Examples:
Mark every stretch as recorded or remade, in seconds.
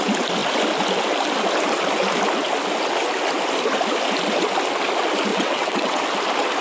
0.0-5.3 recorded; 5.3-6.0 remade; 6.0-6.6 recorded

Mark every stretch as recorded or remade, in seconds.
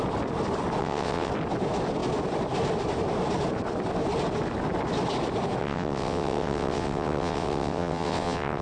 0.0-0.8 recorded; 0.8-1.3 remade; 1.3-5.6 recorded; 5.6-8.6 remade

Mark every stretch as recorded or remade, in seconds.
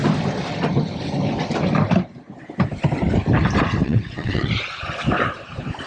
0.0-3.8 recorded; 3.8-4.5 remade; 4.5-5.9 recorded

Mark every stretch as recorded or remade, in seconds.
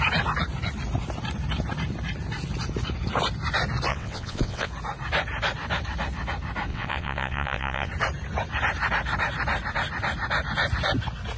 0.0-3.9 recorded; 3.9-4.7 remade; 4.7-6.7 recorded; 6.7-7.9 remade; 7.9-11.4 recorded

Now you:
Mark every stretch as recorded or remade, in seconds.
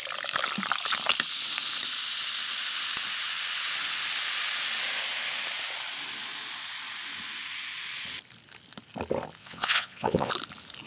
0.0-9.4 recorded; 9.4-10.3 remade; 10.3-10.9 recorded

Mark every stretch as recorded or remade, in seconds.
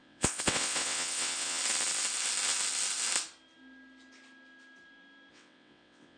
0.0-1.6 remade; 1.6-5.3 recorded; 5.3-6.2 remade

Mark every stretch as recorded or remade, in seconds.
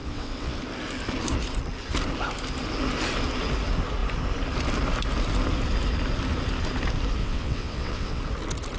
0.0-0.6 remade; 0.6-7.2 recorded; 7.2-8.2 remade; 8.2-8.8 recorded